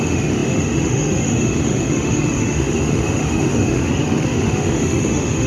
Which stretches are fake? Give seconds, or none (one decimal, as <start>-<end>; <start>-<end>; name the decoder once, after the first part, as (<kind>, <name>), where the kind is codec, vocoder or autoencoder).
0.0-5.5 (autoencoder, DAC-VAE)